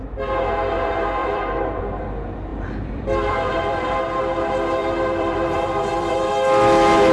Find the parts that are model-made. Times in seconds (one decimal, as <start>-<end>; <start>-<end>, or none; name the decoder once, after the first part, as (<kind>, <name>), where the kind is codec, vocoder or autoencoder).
1.2-1.8 (vocoder, BigVGAN v2); 2.5-4.2; 4.8-6.3